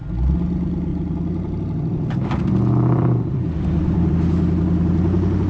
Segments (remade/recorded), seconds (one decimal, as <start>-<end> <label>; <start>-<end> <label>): 0.0-0.9 recorded; 0.9-4.1 remade; 4.1-5.5 recorded